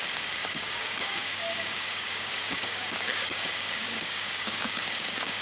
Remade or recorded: remade